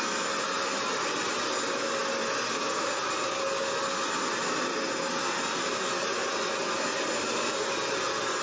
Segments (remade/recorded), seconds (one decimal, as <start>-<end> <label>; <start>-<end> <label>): 0.0-8.4 recorded